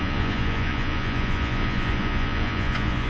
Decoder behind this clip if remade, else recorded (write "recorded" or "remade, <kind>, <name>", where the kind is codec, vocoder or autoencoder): remade, vocoder, Vocos